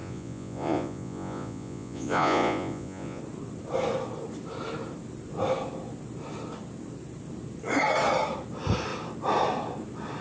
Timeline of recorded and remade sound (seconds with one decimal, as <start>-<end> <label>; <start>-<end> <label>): 0.0-3.2 remade; 3.2-10.2 recorded